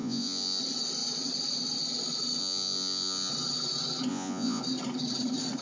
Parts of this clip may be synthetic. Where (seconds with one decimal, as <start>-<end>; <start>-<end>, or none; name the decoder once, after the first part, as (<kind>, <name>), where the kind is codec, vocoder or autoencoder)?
0.0-0.6 (vocoder, Vocos); 2.4-3.3; 4.1-4.6